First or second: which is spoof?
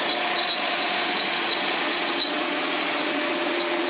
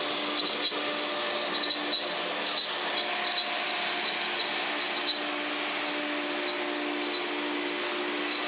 first